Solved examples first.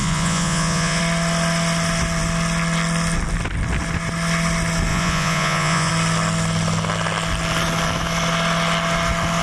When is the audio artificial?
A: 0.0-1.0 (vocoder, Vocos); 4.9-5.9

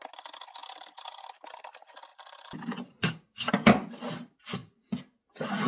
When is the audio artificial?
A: none